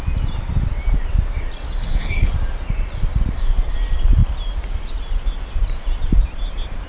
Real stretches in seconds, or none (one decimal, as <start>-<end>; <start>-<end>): 0.0-1.8; 2.3-6.9